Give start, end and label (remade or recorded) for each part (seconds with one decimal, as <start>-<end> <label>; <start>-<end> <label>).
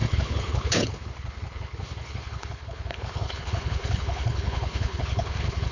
0.0-5.7 remade